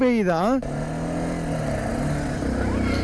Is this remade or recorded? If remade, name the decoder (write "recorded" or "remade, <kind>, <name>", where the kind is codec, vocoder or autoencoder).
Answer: recorded